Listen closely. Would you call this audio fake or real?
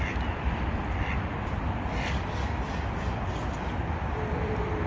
fake